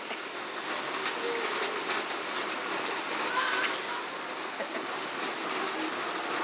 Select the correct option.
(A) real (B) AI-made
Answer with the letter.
A